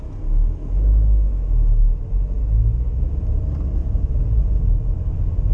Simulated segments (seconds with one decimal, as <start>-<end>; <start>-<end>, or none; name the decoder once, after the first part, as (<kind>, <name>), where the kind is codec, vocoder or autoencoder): 0.6-1.5 (autoencoder, DAC-VAE); 2.4-3.2